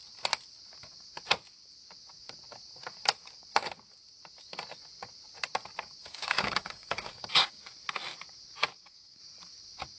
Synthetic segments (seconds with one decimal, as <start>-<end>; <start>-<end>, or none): 6.0-7.7; 8.7-9.2